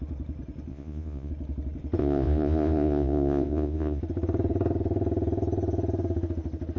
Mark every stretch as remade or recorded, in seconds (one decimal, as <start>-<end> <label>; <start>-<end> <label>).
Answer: 0.0-0.7 recorded; 0.7-1.3 remade; 1.3-2.0 recorded; 2.0-4.0 remade; 4.0-6.8 recorded